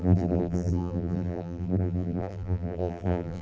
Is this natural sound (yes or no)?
no